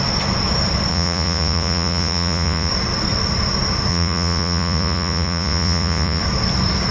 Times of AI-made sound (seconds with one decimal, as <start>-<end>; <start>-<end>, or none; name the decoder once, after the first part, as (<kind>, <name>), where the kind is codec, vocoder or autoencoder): 0.9-2.7 (vocoder, Vocos); 3.9-6.2